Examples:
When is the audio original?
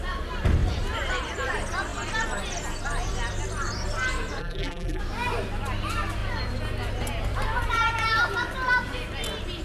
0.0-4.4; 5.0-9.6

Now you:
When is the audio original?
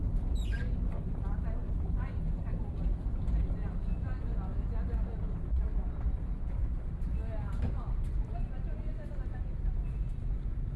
0.0-10.8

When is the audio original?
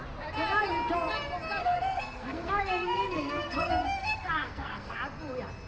0.0-1.6; 5.0-5.7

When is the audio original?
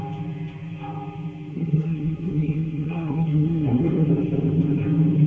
0.0-1.5; 4.1-5.3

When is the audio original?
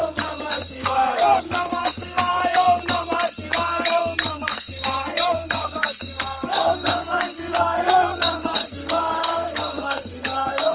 0.0-0.5; 2.4-4.3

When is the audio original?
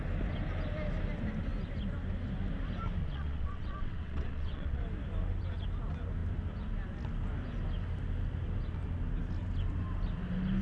0.0-3.0; 4.8-10.6